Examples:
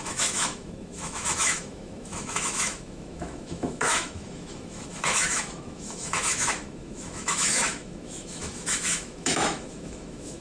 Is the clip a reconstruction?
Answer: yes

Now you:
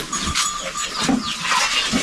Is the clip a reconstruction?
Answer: no